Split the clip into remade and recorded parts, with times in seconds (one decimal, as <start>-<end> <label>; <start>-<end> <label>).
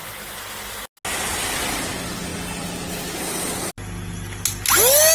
0.0-5.1 recorded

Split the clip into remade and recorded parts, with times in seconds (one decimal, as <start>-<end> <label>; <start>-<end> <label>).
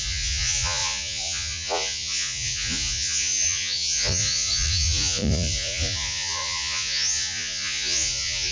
0.0-8.5 remade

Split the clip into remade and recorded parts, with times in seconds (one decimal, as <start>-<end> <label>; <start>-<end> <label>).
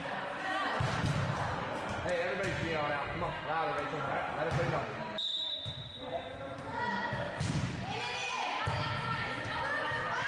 0.0-10.3 recorded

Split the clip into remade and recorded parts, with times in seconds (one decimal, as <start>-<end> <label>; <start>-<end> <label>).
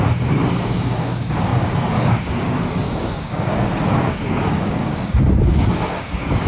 0.0-6.5 remade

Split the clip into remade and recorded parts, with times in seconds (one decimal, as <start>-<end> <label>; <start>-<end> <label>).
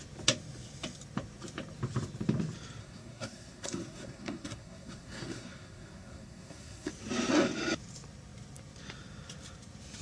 0.0-2.8 recorded; 2.8-6.9 remade; 6.9-10.0 recorded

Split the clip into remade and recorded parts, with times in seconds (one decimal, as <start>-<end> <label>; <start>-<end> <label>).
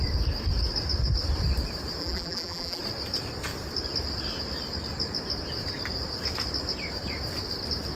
0.0-2.0 recorded; 2.0-2.8 remade; 2.8-7.9 recorded